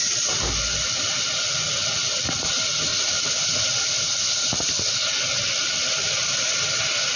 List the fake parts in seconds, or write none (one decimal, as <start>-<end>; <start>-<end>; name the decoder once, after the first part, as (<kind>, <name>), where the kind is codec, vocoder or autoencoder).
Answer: none